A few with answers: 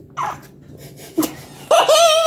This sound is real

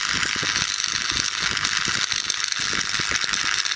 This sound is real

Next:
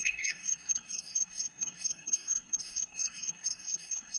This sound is fake